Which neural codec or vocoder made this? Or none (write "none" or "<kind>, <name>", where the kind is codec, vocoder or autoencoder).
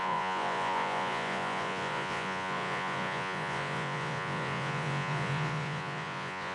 vocoder, Vocos